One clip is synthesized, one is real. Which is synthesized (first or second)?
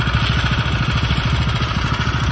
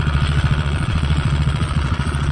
second